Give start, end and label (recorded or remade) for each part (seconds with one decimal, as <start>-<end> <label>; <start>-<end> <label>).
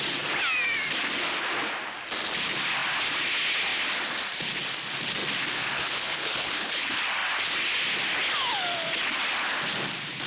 0.0-5.5 recorded; 5.5-7.0 remade; 7.0-10.3 recorded